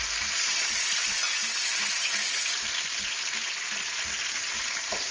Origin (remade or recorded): remade